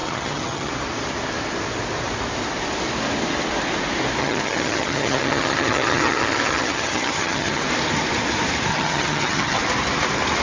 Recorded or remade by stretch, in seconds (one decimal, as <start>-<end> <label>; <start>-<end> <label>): 0.0-0.7 remade; 0.7-4.2 recorded; 4.2-7.6 remade; 7.6-8.7 recorded; 8.7-9.6 remade; 9.6-10.4 recorded